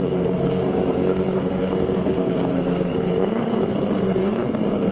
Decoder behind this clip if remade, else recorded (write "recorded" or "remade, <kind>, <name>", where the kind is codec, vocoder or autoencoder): remade, codec, SNAC